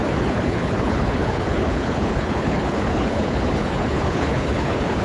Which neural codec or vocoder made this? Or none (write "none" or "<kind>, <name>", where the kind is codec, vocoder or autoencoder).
codec, HILCodec